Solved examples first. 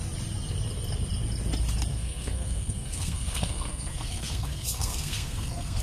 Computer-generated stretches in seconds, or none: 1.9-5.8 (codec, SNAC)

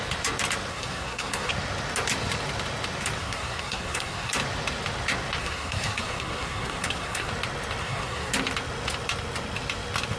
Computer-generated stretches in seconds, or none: 0.7-1.5 (codec, SNAC); 3.2-4.3; 5.4-7.3; 7.8-8.3

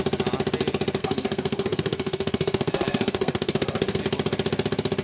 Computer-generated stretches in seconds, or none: 1.0-4.0 (codec, SNAC)

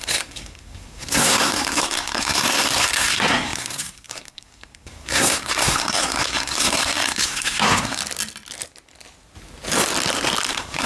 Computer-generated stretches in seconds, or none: 0.0-8.0 (codec, SNAC); 10.5-10.9

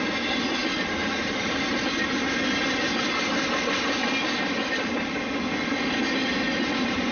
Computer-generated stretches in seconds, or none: none

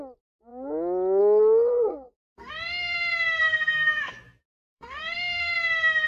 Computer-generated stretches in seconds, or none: 1.7-2.5 (codec, SNAC); 3.4-4.1; 4.5-5.5